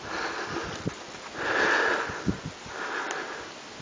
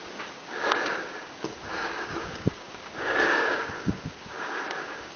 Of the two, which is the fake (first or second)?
second